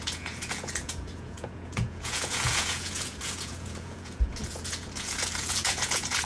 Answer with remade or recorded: remade